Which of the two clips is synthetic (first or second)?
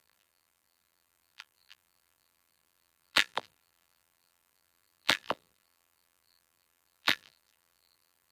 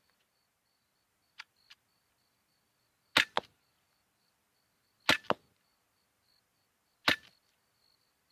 first